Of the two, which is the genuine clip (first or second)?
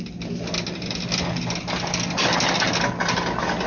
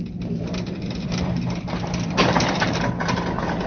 first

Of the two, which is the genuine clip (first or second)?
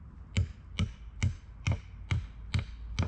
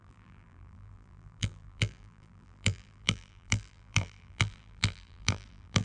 first